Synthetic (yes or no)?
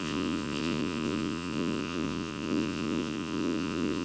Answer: yes